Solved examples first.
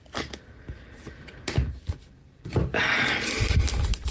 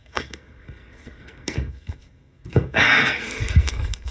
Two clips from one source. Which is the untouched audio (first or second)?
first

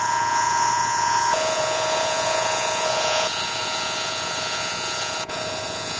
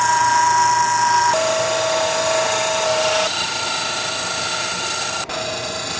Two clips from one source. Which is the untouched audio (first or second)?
second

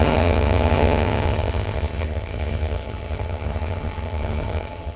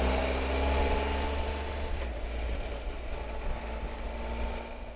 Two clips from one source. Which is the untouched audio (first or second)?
second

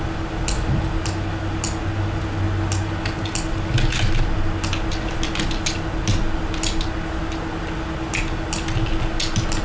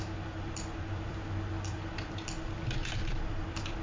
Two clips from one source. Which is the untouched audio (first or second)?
first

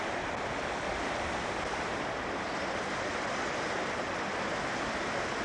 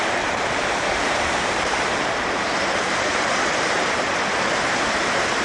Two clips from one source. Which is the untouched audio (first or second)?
first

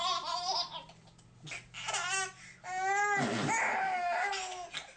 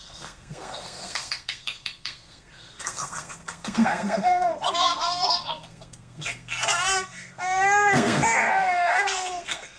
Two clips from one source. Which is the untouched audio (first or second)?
first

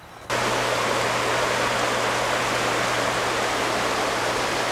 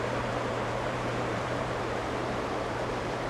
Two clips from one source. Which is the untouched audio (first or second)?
first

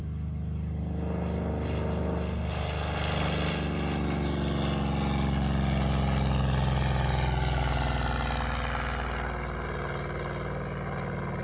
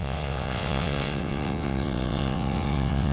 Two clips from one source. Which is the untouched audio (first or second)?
first